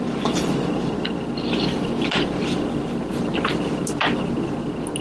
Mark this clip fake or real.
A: real